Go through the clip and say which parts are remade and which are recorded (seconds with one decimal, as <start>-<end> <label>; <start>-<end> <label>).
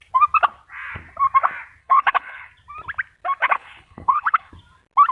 0.0-1.8 recorded; 1.8-2.5 remade; 2.5-3.4 recorded; 3.4-4.5 remade; 4.5-5.1 recorded